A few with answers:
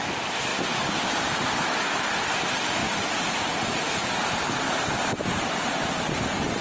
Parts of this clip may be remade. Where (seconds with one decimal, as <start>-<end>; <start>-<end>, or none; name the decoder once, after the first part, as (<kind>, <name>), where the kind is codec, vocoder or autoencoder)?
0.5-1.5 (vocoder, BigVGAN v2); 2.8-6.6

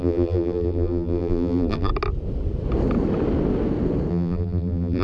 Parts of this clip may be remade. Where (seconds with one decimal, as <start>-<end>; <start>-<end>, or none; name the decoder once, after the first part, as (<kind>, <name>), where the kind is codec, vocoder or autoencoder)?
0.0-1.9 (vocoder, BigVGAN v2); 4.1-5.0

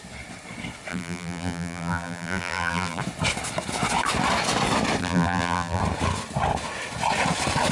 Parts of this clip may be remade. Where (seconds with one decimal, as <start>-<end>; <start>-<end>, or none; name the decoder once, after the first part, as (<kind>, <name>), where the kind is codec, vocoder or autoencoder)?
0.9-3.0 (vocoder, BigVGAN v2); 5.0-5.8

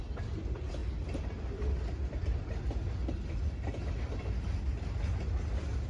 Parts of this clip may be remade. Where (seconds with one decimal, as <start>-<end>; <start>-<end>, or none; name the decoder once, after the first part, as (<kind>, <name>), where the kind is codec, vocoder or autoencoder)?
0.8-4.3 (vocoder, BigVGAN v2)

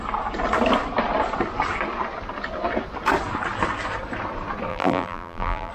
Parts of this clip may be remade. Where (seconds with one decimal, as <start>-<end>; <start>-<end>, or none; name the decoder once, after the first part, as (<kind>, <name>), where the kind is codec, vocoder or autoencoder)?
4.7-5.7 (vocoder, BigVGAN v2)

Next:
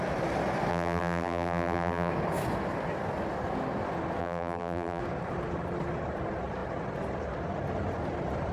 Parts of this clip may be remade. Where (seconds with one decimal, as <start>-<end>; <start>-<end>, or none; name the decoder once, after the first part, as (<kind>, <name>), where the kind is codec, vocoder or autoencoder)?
0.7-2.1 (vocoder, BigVGAN v2); 4.2-5.0

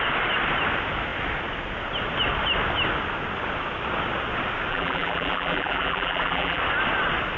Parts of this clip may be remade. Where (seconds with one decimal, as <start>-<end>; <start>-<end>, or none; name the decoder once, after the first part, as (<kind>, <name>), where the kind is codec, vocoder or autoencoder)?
4.7-6.6 (vocoder, BigVGAN v2)